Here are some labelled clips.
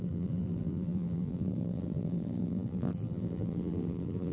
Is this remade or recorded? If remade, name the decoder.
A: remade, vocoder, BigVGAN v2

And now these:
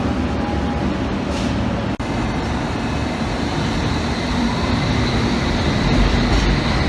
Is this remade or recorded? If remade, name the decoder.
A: recorded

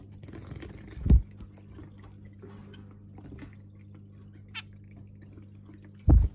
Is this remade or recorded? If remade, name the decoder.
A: recorded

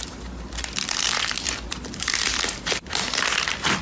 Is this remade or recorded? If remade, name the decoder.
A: remade, vocoder, BigVGAN v2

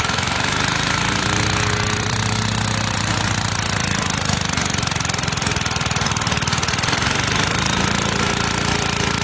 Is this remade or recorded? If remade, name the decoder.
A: remade, vocoder, BigVGAN v2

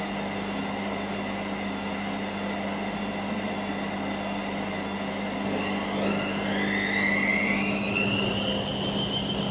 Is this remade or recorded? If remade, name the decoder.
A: recorded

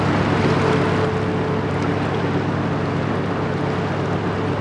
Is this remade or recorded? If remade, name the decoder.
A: recorded